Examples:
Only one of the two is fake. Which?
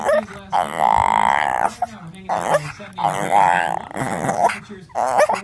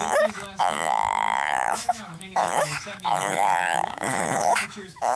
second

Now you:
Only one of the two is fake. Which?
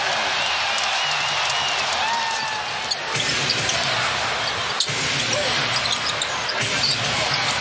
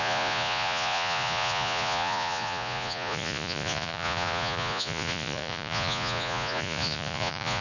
second